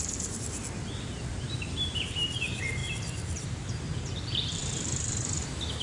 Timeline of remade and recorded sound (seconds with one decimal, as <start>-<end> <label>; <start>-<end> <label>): 0.0-0.6 remade; 0.6-1.3 recorded; 1.3-5.8 remade